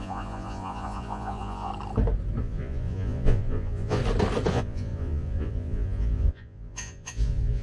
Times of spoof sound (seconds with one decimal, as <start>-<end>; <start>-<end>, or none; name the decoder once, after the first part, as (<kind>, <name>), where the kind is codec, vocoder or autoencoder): 0.0-1.7 (vocoder, Vocos); 2.4-4.0; 4.5-7.6